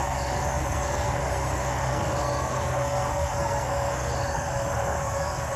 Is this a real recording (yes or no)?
no